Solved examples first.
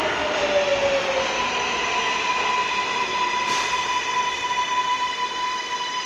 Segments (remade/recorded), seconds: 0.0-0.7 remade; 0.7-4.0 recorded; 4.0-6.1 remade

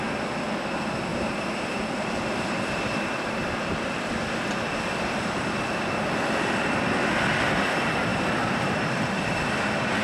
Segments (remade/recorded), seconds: 0.0-1.1 recorded; 1.1-4.1 remade; 4.1-8.1 recorded; 8.1-9.5 remade; 9.5-10.0 recorded

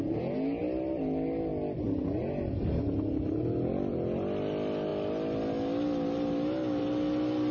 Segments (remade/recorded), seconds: 0.0-7.5 recorded

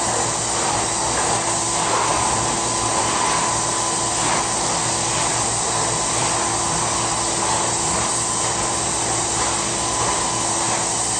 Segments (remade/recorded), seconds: 0.0-11.2 recorded

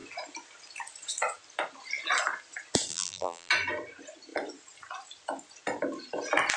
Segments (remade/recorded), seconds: 0.0-2.9 recorded; 2.9-3.5 remade; 3.5-6.6 recorded

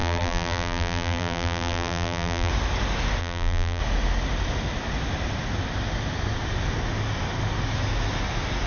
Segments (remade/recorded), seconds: 0.0-2.5 remade; 2.5-3.2 recorded; 3.2-3.8 remade; 3.8-8.7 recorded